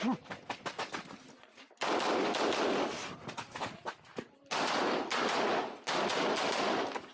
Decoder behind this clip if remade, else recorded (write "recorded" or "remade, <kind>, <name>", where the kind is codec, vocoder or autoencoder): recorded